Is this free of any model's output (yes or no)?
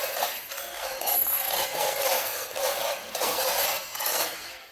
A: no